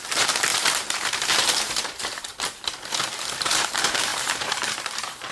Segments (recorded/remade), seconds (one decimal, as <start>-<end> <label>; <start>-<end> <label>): 0.0-2.3 remade; 2.3-3.3 recorded; 3.3-5.3 remade